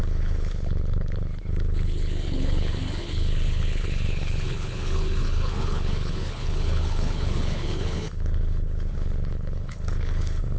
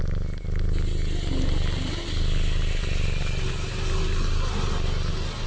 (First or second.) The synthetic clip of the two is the first